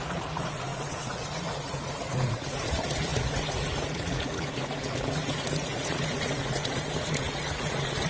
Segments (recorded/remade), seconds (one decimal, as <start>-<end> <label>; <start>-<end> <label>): 0.0-8.1 remade